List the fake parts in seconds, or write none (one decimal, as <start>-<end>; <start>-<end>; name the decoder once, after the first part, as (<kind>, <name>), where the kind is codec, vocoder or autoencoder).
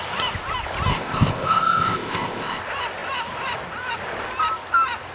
0.9-2.6 (codec, ZipCodec)